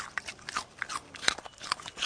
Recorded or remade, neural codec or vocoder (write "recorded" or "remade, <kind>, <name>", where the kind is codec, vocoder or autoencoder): recorded